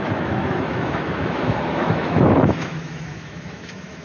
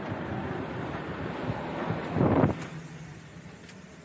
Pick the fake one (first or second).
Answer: first